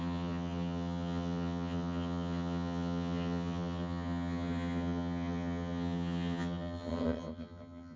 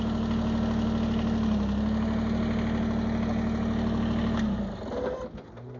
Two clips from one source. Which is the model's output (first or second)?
first